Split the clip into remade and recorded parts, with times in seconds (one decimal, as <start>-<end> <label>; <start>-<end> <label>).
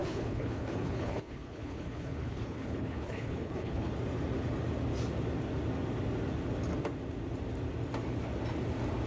0.0-3.9 remade; 3.9-9.1 recorded